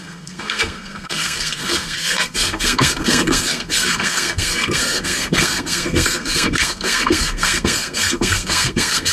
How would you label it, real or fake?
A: fake